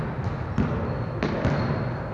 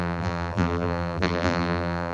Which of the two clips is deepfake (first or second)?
second